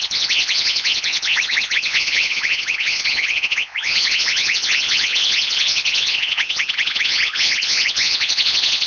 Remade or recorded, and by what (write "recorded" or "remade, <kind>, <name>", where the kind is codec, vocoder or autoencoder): remade, vocoder, Vocos